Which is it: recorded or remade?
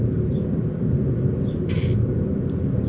recorded